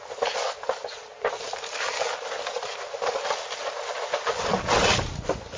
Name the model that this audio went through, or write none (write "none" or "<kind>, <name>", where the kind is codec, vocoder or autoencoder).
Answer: none